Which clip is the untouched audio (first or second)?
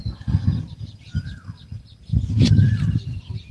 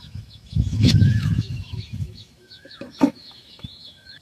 first